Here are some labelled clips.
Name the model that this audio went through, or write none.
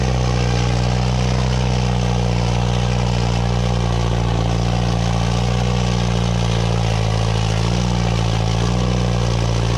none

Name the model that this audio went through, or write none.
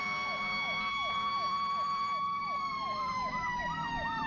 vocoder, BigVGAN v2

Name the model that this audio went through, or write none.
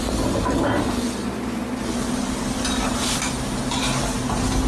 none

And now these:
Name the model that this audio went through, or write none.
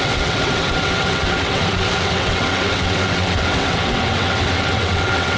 vocoder, WaveNeXt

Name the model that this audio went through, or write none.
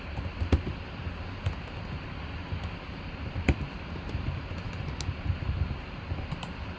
none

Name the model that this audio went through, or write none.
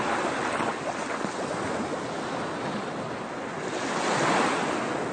none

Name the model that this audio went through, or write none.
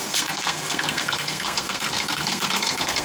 codec, SNAC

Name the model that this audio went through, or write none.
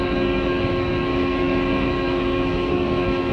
codec, SNAC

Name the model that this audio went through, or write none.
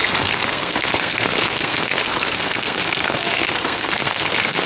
codec, SNAC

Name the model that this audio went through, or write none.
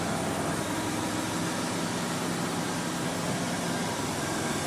none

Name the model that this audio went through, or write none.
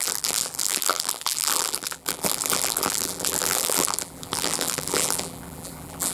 vocoder, BigVGAN v2